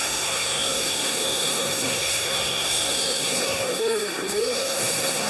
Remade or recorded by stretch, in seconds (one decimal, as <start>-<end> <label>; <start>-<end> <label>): 0.0-5.3 remade